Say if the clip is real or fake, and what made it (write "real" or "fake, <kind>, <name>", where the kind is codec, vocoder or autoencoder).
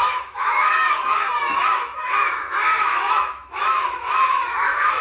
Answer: fake, autoencoder, DAC-VAE